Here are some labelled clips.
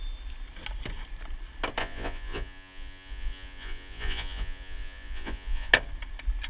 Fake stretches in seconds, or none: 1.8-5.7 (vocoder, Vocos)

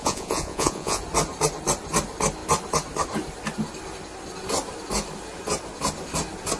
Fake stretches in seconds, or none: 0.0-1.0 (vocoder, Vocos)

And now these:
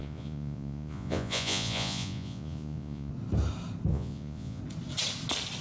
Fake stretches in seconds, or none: 0.0-3.1 (vocoder, Vocos); 3.9-4.6

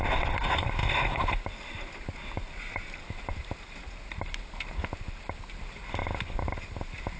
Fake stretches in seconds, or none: none